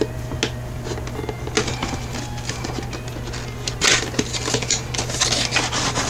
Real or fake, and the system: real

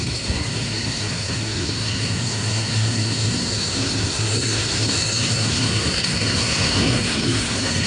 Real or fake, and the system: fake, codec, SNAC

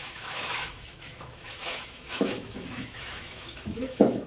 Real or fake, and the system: fake, autoencoder, DAC-VAE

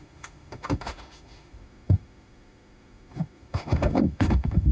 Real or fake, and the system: fake, autoencoder, DAC-VAE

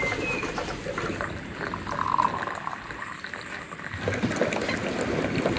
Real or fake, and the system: real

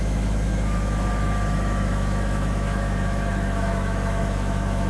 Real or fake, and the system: fake, autoencoder, DAC-VAE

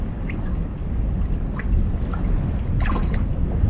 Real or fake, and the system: real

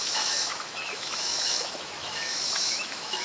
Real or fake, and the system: fake, autoencoder, DAC-VAE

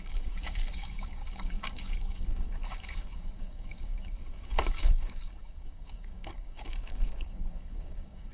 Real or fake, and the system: fake, codec, DAC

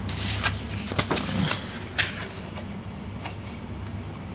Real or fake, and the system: real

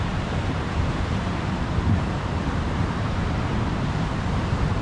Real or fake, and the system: fake, vocoder, BigVGAN v2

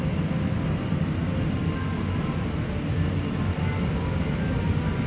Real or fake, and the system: real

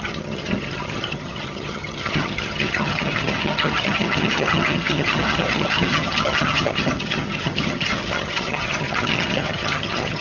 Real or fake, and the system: fake, vocoder, HiFi-GAN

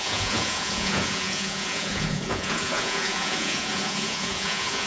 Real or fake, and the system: fake, vocoder, Vocos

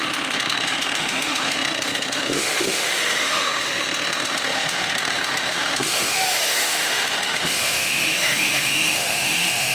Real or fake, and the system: fake, autoencoder, DAC-VAE